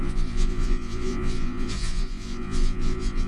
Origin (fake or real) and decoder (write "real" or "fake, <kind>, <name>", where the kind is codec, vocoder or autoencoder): fake, vocoder, Vocos